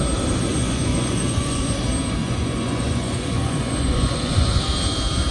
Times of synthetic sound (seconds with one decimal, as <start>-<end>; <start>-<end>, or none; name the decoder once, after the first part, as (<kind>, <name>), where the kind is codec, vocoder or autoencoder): 0.5-1.6 (vocoder, Vocos); 2.2-4.6